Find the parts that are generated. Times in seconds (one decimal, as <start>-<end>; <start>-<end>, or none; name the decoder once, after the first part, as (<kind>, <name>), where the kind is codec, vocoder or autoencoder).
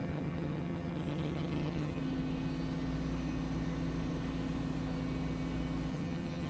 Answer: 0.0-2.0 (vocoder, HiFi-GAN); 5.9-6.5